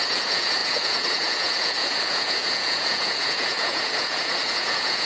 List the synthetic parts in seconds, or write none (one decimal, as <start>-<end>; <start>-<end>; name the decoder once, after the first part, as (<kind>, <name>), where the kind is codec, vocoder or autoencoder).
0.0-5.1 (vocoder, Vocos)

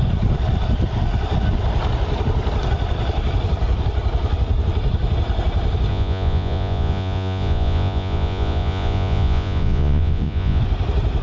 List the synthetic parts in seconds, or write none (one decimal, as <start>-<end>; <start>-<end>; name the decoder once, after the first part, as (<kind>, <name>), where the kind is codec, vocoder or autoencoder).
5.9-10.6 (vocoder, Vocos)

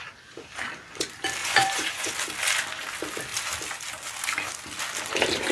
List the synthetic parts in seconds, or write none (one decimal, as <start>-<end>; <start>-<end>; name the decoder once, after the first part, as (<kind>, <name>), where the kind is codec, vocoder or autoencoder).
1.4-2.1 (vocoder, Vocos)

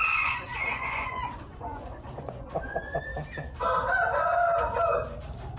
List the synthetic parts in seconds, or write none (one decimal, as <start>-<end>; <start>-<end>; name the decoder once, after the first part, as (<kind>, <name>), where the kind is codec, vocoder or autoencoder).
0.0-3.1 (vocoder, Vocos)

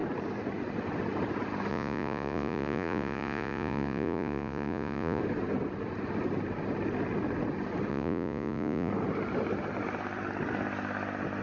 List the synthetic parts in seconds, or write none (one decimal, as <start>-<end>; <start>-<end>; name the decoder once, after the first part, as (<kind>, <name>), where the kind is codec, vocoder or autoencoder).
1.7-5.2 (vocoder, Vocos); 7.9-8.9

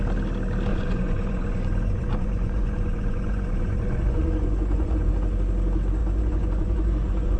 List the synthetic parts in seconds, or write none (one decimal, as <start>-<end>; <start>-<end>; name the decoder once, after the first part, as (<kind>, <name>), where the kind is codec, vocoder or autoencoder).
0.7-5.1 (vocoder, Vocos); 6.0-7.4

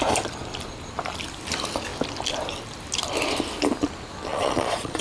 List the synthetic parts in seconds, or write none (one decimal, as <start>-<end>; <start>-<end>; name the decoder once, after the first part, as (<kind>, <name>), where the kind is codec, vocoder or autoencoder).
4.3-5.0 (vocoder, Vocos)